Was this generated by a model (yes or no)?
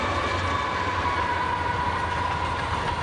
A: no